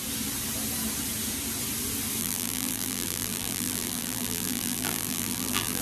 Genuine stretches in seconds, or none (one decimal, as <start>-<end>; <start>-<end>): 0.0-2.2